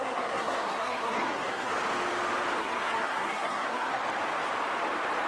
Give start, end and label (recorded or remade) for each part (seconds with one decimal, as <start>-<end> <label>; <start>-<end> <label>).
0.0-1.7 remade; 1.7-2.6 recorded; 2.6-4.0 remade; 4.0-5.3 recorded